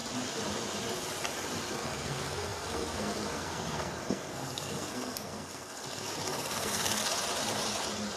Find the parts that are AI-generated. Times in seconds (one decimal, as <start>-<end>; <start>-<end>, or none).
1.7-7.0